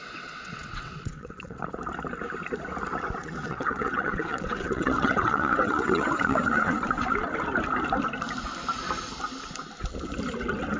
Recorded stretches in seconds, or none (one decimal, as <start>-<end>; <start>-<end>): 1.6-3.2; 7.1-10.8